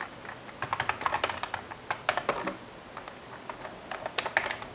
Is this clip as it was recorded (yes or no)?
yes